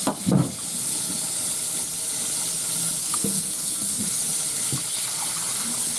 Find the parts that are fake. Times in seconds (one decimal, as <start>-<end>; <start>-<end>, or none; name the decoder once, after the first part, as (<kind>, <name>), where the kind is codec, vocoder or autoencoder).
3.0-4.2 (codec, SNAC)